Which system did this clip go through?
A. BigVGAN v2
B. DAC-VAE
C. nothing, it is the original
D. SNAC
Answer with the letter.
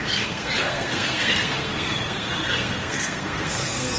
D